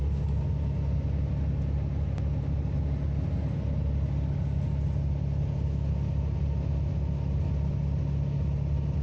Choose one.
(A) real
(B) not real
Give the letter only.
A